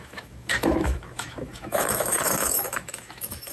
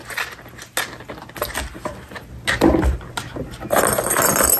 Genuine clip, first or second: second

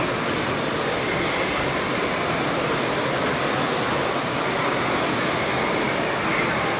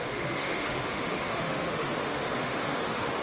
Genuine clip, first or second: first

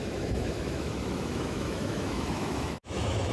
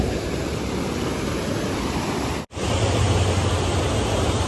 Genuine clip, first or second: second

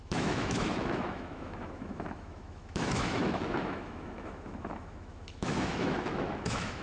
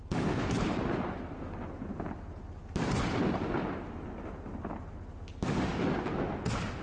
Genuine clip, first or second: second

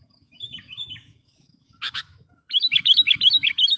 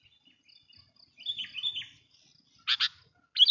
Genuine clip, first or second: second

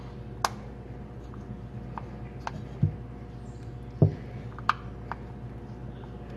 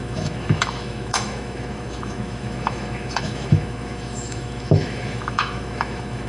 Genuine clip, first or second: first